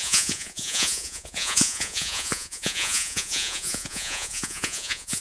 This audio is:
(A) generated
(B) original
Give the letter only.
A